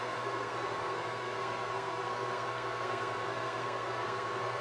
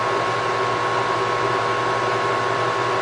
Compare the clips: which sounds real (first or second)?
second